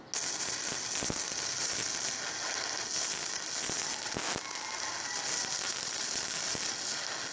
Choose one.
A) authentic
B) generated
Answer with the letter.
A